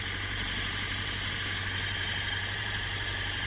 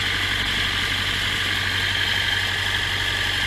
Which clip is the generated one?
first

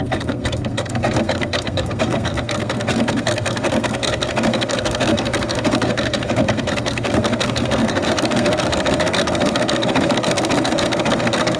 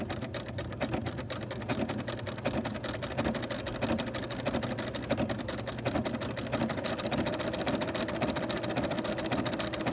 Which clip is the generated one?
first